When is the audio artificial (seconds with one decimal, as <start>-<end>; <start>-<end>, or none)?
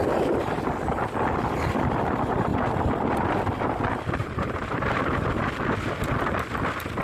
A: 4.2-5.0